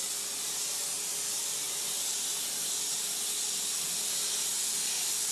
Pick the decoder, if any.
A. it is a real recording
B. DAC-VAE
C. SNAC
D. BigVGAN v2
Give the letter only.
A